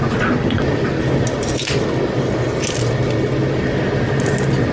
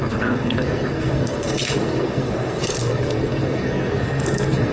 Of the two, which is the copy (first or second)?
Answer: second